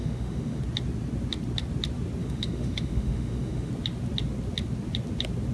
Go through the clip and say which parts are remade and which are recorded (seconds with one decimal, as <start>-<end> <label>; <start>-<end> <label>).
0.0-0.6 remade; 0.6-2.2 recorded; 2.2-3.7 remade; 3.7-5.5 recorded